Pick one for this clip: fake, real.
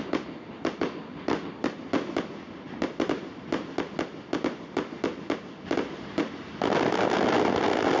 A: real